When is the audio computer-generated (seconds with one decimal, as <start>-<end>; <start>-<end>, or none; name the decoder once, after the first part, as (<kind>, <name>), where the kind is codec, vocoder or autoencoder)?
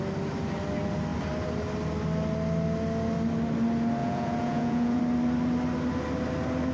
4.0-5.0 (vocoder, Vocos)